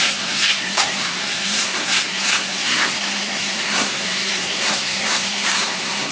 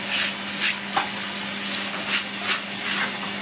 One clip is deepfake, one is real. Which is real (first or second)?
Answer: second